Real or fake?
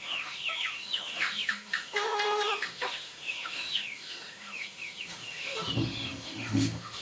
fake